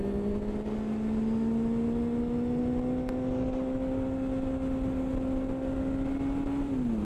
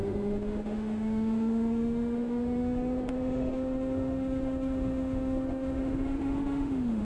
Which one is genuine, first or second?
first